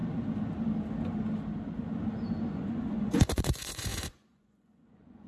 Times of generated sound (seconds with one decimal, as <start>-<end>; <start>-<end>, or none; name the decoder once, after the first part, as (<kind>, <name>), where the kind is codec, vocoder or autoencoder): 2.5-5.3 (vocoder, Vocos)